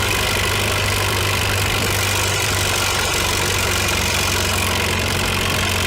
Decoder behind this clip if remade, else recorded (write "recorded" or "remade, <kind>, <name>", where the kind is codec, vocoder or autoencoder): remade, vocoder, BigVGAN v2